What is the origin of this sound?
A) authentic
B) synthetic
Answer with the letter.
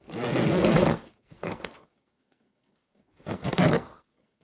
B